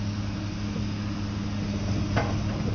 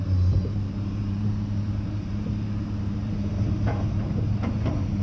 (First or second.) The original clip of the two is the first